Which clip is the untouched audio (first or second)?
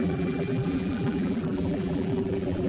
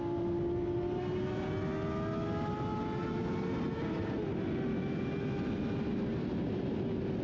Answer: second